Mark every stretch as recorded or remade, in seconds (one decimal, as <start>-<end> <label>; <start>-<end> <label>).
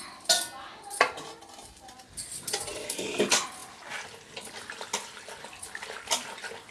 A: 0.0-6.7 recorded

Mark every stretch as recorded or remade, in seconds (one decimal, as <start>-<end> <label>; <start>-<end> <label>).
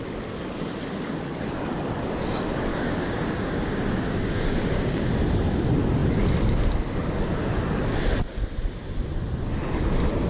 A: 0.0-2.7 recorded; 2.7-5.1 remade; 5.1-10.3 recorded